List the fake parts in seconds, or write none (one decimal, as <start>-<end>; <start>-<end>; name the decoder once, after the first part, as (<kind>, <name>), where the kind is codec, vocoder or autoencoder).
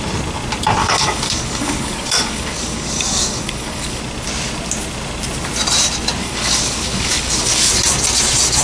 0.8-4.0 (codec, DAC); 6.2-7.7